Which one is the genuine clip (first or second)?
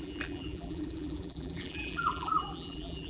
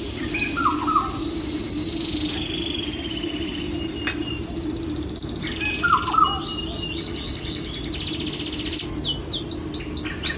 second